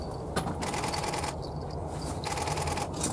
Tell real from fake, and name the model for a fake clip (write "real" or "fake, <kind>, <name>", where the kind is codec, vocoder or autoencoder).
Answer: real